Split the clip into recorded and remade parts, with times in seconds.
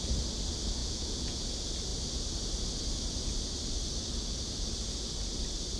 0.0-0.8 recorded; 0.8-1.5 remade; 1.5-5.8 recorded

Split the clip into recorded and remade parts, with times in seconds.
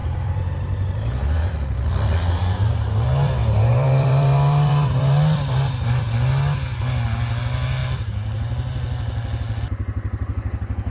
0.0-1.4 remade; 1.4-3.4 recorded; 3.4-6.1 remade; 6.1-10.9 recorded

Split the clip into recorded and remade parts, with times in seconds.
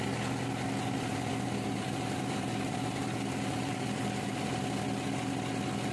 0.0-1.1 recorded; 1.1-4.6 remade; 4.6-5.9 recorded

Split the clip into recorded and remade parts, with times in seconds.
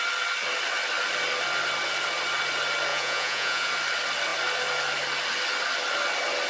0.0-2.9 recorded; 2.9-3.7 remade; 3.7-6.5 recorded